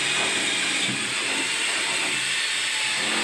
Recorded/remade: recorded